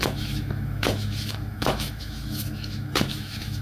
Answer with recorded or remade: remade